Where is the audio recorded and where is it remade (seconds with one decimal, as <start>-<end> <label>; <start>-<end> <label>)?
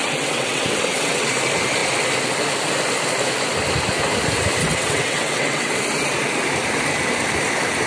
0.0-1.3 remade; 1.3-4.6 recorded; 4.6-5.7 remade; 5.7-7.9 recorded